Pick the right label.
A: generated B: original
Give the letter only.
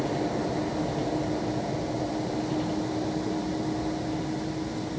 B